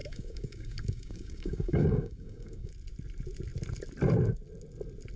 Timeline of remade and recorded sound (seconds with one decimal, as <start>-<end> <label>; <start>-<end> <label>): 0.0-2.7 remade; 2.7-5.2 recorded